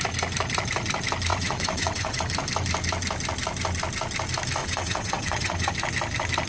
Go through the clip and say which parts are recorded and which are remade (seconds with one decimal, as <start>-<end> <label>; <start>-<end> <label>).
0.0-1.3 recorded; 1.3-2.2 remade; 2.2-4.6 recorded; 4.6-5.7 remade; 5.7-6.5 recorded